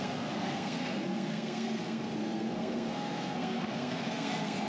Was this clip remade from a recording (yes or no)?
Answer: yes